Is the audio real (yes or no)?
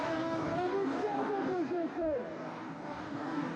no